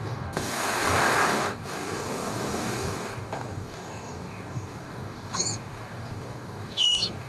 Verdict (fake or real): fake